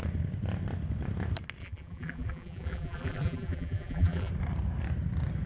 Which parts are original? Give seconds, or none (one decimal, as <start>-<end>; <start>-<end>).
0.0-1.6; 4.3-5.5